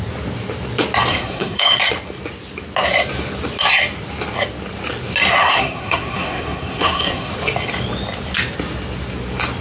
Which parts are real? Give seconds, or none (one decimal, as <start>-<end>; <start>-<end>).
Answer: 0.0-1.1; 1.8-5.4; 7.3-9.6